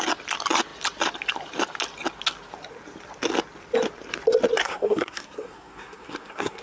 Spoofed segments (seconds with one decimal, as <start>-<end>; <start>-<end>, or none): 4.6-6.6